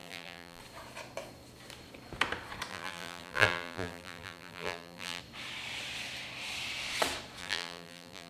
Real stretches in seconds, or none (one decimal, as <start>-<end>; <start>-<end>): 0.6-2.7; 5.2-7.4